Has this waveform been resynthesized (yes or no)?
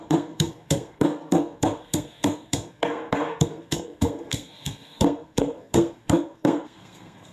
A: yes